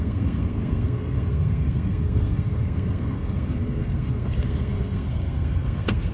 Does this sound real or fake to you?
fake